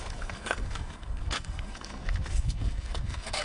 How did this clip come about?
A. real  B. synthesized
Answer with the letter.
B